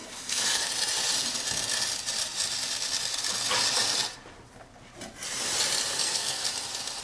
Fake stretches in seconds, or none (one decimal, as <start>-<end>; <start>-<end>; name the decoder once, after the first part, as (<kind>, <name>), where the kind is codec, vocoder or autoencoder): 0.0-0.7 (codec, SNAC); 5.9-6.5